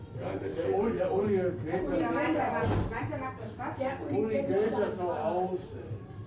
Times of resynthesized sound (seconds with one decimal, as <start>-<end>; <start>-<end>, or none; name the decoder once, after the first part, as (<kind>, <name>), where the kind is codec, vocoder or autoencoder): none